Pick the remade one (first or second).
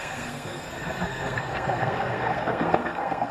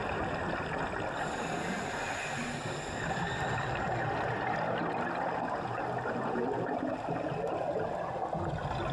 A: first